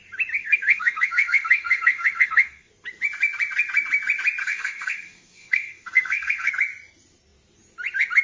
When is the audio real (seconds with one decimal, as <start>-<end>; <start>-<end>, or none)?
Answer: 0.0-0.4; 2.7-4.4; 6.5-8.2